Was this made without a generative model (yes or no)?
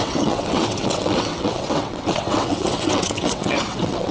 no